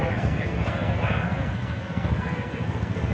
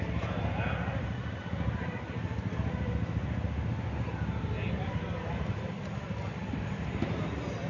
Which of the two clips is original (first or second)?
second